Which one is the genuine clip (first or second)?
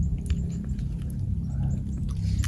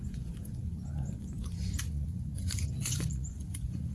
first